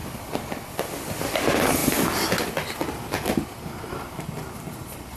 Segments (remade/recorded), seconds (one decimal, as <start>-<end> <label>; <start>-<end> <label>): 0.0-5.2 recorded

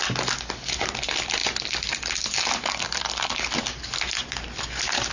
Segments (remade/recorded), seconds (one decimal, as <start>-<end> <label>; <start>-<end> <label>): 0.0-5.1 recorded

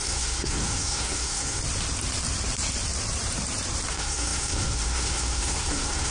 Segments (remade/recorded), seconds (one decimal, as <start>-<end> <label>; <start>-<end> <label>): 0.0-1.6 remade; 1.6-3.9 recorded; 3.9-6.1 remade

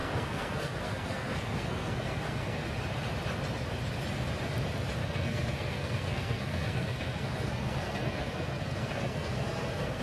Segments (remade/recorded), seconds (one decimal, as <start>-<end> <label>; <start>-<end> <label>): 0.0-2.7 remade; 2.7-5.0 recorded; 5.0-10.0 remade

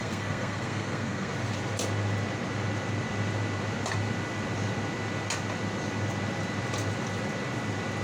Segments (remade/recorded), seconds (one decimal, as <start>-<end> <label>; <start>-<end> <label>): 0.0-1.3 remade; 1.3-8.0 recorded